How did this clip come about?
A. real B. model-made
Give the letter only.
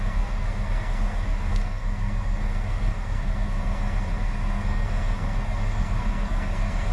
B